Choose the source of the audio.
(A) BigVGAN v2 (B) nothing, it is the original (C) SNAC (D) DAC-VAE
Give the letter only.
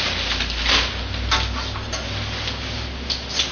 B